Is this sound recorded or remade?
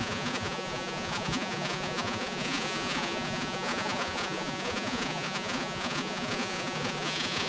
remade